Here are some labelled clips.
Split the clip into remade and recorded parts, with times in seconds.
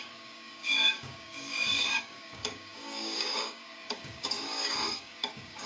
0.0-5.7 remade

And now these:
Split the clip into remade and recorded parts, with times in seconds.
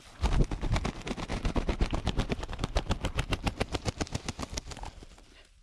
0.0-1.3 recorded; 1.3-3.9 remade; 3.9-5.6 recorded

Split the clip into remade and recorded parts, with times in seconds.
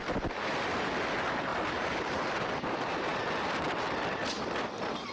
0.0-5.1 recorded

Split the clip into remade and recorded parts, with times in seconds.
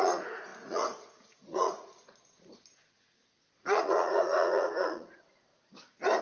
0.0-5.5 remade; 5.5-6.2 recorded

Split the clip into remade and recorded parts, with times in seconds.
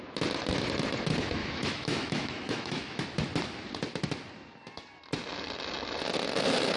0.0-1.4 recorded; 1.4-3.0 remade; 3.0-6.8 recorded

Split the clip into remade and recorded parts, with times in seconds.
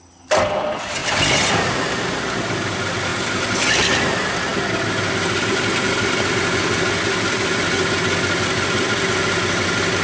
0.0-10.0 recorded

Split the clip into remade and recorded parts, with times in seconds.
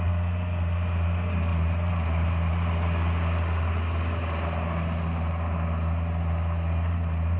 0.0-7.4 recorded